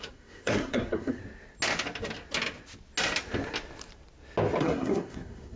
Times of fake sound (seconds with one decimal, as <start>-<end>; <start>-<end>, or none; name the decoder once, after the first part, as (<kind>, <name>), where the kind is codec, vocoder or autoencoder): 0.0-1.2 (codec, SNAC); 4.6-5.6